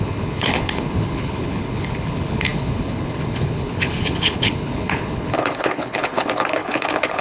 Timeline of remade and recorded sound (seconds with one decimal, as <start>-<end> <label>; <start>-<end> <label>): 0.0-7.2 remade